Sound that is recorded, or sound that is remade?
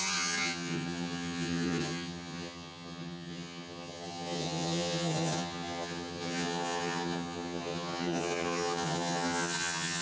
remade